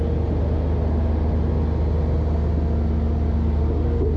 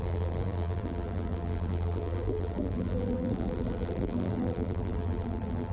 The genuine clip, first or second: first